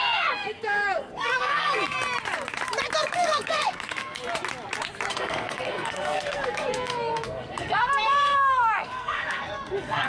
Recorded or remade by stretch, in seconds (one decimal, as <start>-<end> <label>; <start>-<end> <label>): 0.0-1.8 remade; 1.8-3.0 recorded; 3.0-4.2 remade; 4.2-5.1 recorded; 5.1-10.1 remade